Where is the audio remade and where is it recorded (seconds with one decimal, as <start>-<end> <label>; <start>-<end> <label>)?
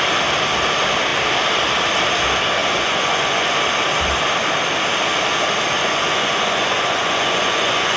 0.0-2.6 recorded; 2.6-3.6 remade; 3.6-5.8 recorded; 5.8-8.0 remade